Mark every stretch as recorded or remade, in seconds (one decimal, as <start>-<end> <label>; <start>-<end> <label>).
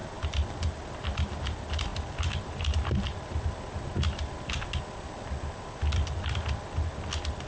0.0-7.5 recorded